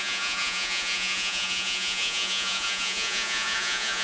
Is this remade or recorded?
remade